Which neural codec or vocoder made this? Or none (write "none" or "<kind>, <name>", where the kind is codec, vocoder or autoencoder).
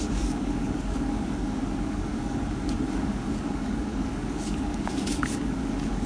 codec, DAC